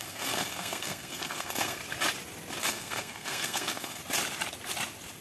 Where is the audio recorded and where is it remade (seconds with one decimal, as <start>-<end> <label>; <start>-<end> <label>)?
0.0-1.8 remade; 1.8-2.6 recorded; 2.6-4.0 remade; 4.0-5.2 recorded